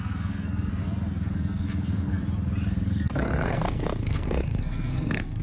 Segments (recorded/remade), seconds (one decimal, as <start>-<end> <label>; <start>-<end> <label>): 0.0-0.7 remade; 0.7-1.3 recorded; 1.3-2.2 remade; 2.2-2.9 recorded; 2.9-5.4 remade